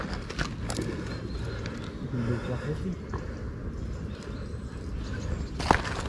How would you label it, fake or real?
real